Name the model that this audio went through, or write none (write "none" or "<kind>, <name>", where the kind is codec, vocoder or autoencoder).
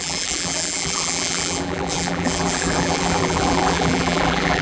vocoder, BigVGAN v2